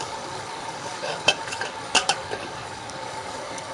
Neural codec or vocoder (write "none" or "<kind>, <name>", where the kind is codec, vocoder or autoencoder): codec, DAC